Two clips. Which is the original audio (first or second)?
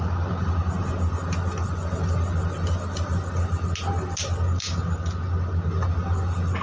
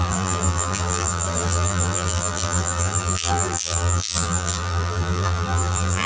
first